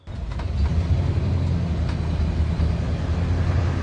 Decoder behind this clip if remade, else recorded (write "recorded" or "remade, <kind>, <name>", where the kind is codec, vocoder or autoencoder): recorded